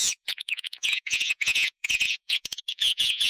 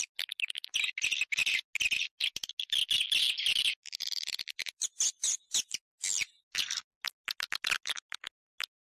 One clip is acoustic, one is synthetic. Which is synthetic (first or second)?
first